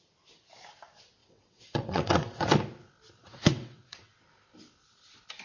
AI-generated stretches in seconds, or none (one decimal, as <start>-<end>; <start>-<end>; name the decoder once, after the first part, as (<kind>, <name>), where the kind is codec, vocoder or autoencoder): 1.2-2.5 (vocoder, WaveNeXt); 3.2-4.1